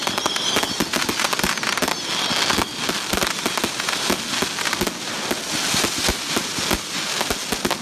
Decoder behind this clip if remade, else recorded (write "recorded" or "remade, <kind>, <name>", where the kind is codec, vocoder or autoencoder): recorded